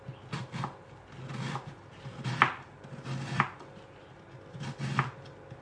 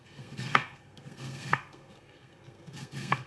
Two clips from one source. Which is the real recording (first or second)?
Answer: first